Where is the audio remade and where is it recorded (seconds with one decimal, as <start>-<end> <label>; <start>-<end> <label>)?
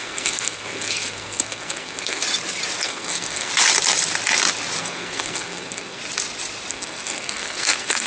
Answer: 0.0-2.2 remade; 2.2-2.8 recorded; 2.8-3.5 remade; 3.5-4.8 recorded; 4.8-6.0 remade; 6.0-6.7 recorded; 6.7-8.1 remade